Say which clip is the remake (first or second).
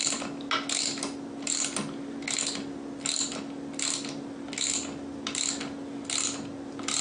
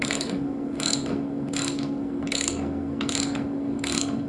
second